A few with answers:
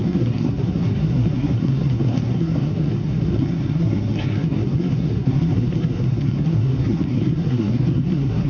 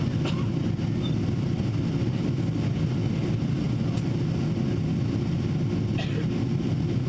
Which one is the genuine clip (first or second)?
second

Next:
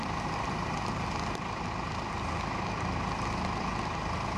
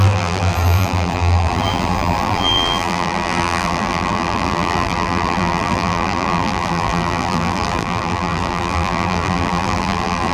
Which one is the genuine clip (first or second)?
first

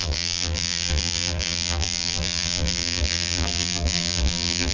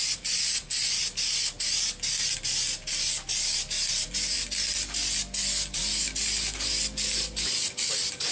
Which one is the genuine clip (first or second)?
second